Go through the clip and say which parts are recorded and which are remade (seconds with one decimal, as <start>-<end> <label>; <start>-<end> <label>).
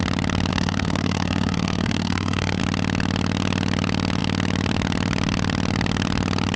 0.0-0.5 recorded; 0.5-2.6 remade; 2.6-6.6 recorded